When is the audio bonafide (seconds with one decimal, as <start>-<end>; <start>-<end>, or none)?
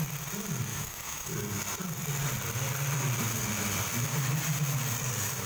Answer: 0.0-0.7; 1.3-5.5